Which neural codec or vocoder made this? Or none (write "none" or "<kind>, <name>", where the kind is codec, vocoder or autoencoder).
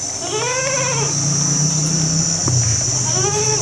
none